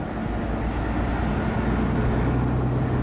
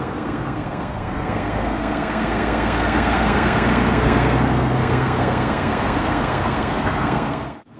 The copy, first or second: second